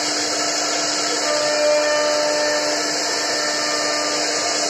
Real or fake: real